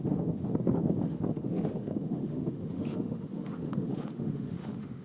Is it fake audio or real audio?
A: fake